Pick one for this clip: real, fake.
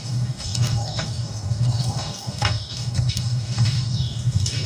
fake